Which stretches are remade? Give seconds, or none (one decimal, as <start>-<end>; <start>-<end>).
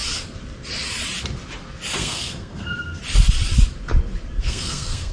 2.0-3.0; 4.4-5.1